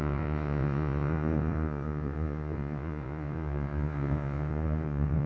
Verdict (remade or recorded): remade